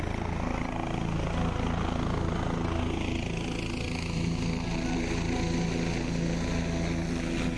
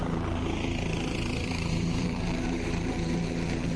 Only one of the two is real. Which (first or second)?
first